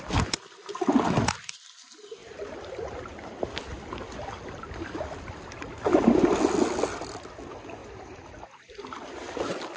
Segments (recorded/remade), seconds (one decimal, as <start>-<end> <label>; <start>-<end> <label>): 0.0-2.2 recorded; 2.2-3.3 remade; 3.3-7.8 recorded; 7.8-8.3 remade; 8.3-9.8 recorded